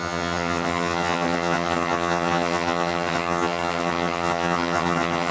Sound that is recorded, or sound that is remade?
remade